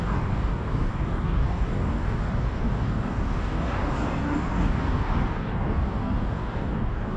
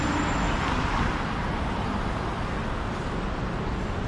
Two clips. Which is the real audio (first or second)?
second